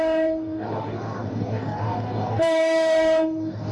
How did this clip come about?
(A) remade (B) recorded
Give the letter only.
A